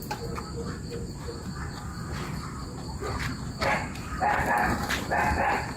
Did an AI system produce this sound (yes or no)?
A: no